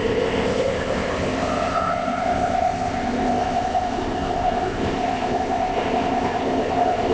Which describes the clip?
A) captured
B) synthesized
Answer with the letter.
B